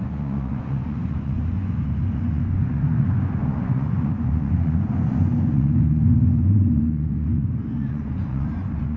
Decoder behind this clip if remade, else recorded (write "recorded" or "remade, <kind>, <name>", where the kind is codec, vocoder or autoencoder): remade, vocoder, Vocos